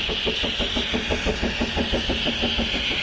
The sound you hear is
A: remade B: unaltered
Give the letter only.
B